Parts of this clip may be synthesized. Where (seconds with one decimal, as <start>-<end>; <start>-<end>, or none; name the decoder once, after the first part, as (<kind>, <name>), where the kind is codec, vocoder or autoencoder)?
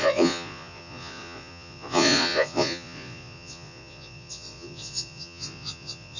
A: 0.0-6.2 (vocoder, Vocos)